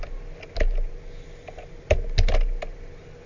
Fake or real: real